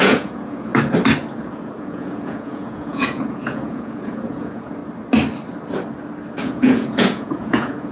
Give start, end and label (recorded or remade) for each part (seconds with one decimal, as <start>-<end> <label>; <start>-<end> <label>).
0.0-0.7 remade; 0.7-1.8 recorded; 1.8-4.8 remade; 4.8-6.4 recorded; 6.4-7.9 remade